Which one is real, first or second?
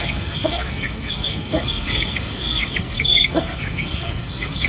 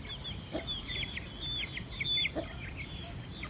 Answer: second